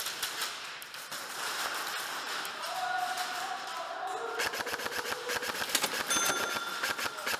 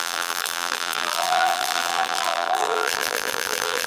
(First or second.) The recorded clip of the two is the first